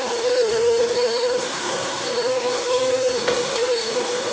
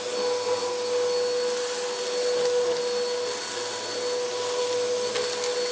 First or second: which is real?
second